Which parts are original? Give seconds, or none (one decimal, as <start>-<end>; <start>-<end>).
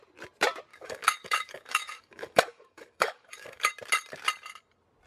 0.0-0.7; 3.7-5.1